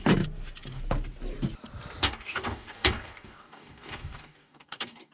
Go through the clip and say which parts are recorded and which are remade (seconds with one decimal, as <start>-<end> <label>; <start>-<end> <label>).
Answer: 0.0-2.0 recorded; 2.0-5.1 remade